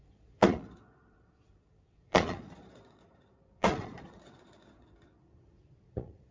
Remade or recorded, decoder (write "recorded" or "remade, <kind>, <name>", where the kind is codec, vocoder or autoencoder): remade, vocoder, Vocos